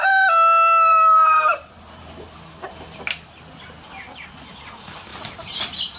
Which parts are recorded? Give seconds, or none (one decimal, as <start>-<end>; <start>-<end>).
0.0-0.9; 2.1-5.1; 5.6-6.0